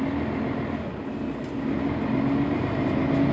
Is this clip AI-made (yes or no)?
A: no